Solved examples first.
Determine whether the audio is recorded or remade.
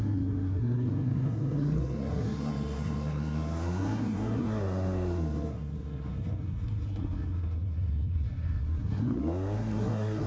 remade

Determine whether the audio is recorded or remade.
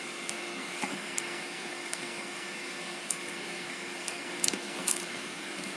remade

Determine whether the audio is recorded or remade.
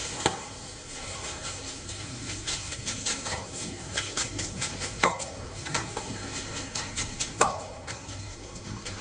remade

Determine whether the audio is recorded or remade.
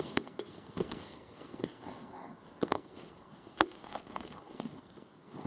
remade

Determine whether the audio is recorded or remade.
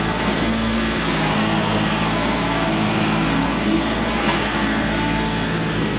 remade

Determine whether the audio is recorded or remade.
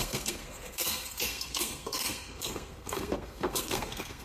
remade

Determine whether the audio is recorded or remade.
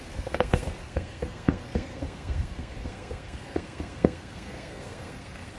remade